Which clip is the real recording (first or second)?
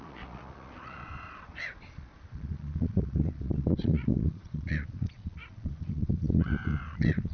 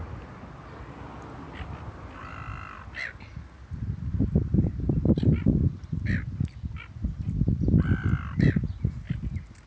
second